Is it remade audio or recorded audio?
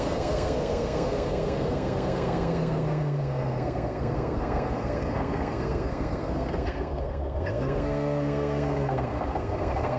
remade